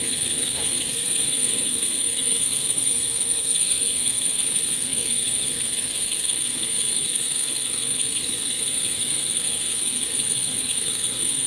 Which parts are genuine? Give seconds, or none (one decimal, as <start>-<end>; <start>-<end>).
none